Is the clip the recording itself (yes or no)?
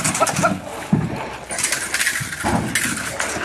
yes